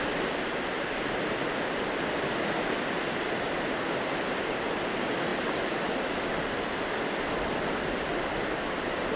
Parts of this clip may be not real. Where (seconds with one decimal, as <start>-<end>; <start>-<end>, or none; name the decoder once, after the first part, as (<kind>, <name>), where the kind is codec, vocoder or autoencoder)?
none